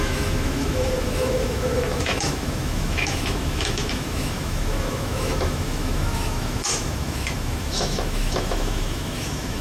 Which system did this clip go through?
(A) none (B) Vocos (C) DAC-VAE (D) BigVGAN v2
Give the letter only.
C